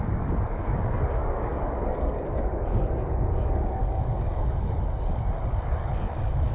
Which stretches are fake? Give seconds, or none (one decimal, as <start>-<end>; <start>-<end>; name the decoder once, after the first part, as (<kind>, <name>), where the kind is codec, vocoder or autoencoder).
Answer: 0.0-6.5 (codec, DAC)